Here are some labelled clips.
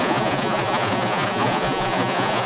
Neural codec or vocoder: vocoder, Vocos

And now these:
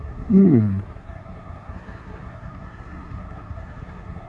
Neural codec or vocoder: codec, SNAC